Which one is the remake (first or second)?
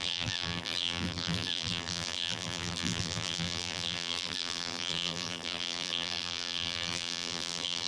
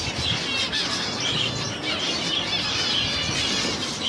first